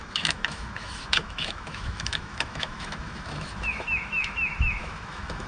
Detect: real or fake fake